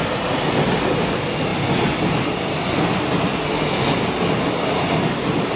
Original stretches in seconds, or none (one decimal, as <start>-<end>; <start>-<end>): 0.0-5.6